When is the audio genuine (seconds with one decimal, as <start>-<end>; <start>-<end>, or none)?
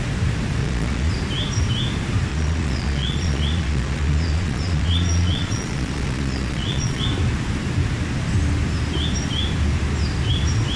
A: 0.0-0.6; 1.1-2.3; 7.0-10.8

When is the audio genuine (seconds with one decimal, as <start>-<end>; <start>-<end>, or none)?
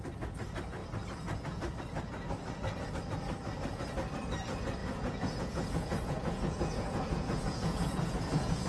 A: 0.0-4.8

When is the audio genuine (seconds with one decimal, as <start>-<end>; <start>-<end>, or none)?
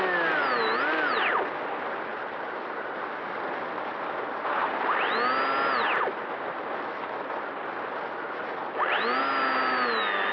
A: 0.0-10.3